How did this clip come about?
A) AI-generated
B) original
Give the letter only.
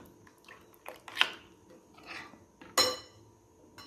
B